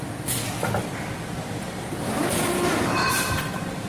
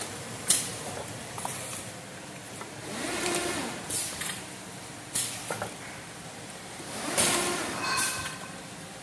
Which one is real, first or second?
first